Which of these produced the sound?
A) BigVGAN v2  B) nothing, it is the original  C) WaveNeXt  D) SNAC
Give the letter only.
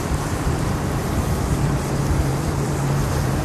A